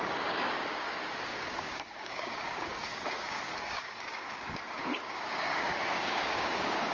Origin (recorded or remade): remade